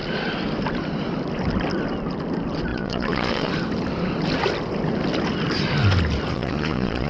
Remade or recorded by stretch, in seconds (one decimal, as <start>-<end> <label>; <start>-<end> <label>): 0.0-2.7 recorded; 2.7-3.5 remade; 3.5-6.3 recorded; 6.3-7.1 remade